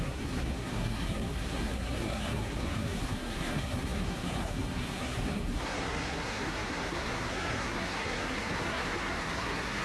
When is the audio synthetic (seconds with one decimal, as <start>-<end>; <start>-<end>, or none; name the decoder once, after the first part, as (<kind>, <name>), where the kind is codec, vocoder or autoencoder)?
0.0-9.8 (codec, SNAC)